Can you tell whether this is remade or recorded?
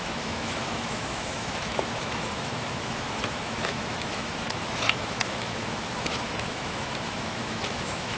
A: remade